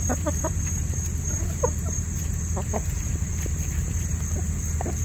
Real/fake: real